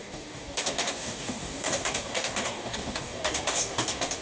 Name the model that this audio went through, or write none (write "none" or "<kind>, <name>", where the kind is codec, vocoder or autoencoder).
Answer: codec, DAC